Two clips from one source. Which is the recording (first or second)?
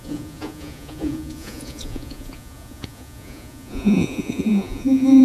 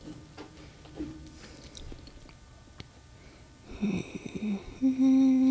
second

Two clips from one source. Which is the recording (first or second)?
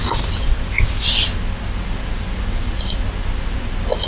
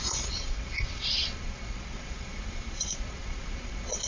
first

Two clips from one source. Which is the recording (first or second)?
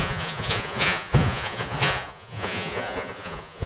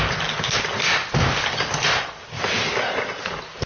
second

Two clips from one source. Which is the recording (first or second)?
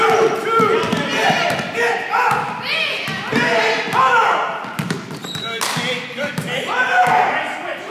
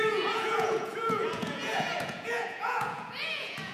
first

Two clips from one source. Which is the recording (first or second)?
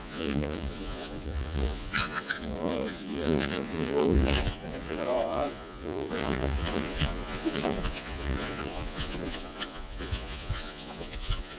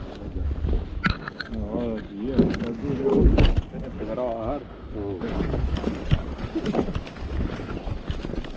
second